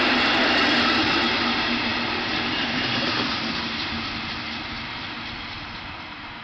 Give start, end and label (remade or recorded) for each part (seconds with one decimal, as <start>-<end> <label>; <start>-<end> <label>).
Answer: 0.0-6.4 recorded